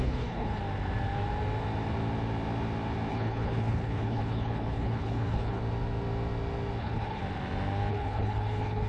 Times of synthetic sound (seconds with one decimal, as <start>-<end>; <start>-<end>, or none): 0.0-0.6; 3.1-5.6; 6.8-7.2; 7.9-8.9